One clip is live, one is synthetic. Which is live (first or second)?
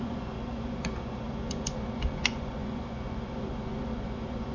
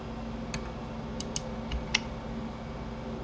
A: second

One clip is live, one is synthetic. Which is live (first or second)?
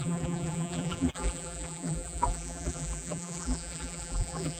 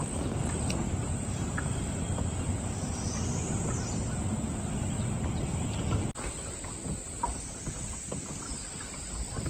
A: second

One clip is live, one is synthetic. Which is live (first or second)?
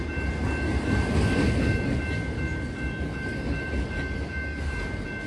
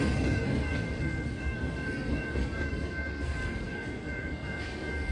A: first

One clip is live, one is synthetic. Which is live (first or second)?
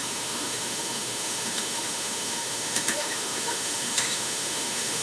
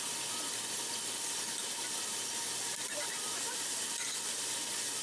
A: second